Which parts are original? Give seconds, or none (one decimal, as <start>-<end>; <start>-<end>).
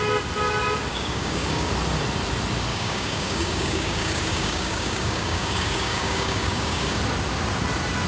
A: 0.0-0.9; 1.7-2.7; 7.0-8.1